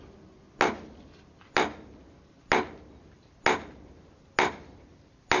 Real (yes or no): yes